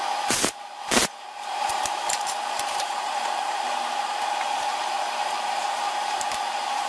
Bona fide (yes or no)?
no